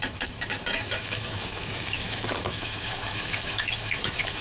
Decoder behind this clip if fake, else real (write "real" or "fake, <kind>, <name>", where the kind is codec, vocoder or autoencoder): fake, autoencoder, DAC-VAE